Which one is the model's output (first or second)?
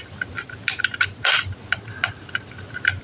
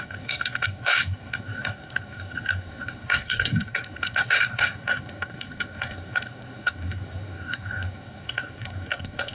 second